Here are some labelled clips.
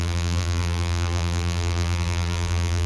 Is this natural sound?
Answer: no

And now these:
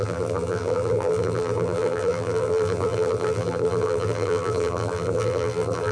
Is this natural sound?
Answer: no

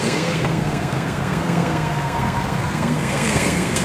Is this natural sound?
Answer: no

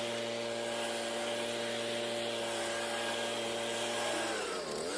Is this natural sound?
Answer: yes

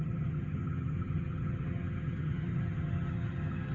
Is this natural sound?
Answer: no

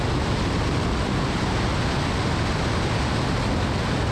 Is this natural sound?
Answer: yes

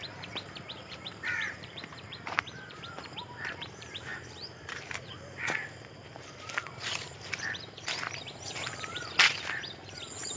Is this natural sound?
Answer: no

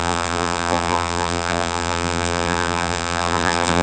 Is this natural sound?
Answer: no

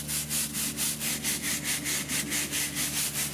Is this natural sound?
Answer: yes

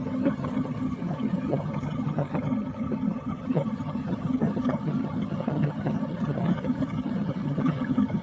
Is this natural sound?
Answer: no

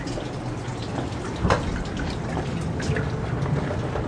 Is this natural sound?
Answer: yes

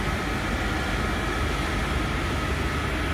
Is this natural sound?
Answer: yes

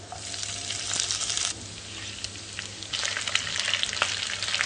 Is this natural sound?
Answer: yes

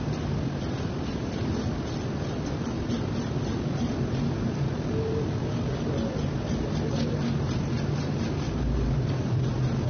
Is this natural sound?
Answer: yes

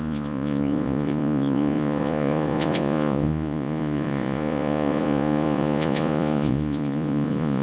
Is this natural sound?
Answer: no